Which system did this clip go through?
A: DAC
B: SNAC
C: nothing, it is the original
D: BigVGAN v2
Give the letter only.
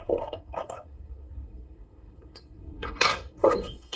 B